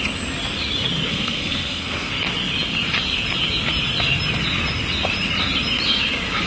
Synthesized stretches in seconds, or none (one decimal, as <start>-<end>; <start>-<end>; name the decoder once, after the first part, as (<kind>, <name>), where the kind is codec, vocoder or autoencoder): 1.1-2.1 (codec, SNAC)